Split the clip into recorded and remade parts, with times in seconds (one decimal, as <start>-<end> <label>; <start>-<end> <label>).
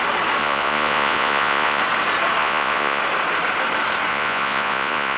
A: 0.0-0.4 recorded; 0.4-1.8 remade; 1.8-2.4 recorded; 2.4-3.0 remade; 3.0-4.1 recorded; 4.1-5.2 remade